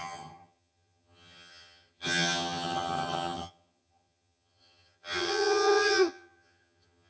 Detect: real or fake fake